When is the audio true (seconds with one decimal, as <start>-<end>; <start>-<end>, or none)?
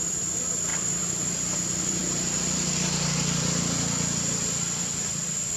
2.0-5.6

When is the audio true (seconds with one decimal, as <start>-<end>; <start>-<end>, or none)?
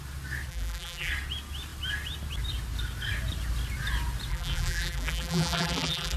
0.0-0.5; 1.1-4.3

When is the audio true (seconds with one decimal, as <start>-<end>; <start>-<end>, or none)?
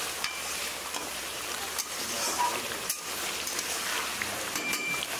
none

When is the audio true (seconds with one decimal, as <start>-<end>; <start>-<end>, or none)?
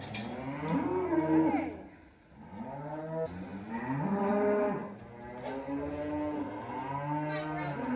0.0-8.0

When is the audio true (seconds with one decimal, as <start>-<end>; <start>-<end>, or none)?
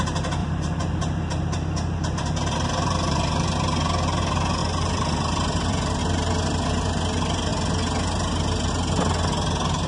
0.0-0.4; 3.3-4.6; 6.0-9.9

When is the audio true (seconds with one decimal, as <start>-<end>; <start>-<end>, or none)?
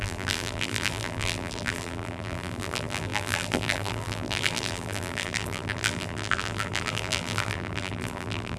none